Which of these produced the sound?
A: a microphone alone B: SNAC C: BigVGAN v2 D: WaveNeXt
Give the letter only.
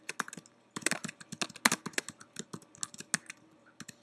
A